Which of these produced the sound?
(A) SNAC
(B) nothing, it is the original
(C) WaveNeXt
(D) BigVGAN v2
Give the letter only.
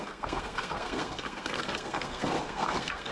A